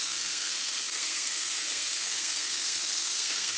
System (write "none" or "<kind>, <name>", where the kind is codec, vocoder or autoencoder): codec, SNAC